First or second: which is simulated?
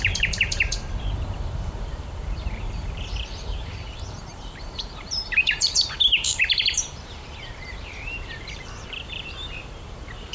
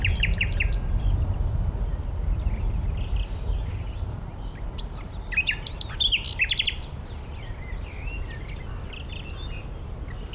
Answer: first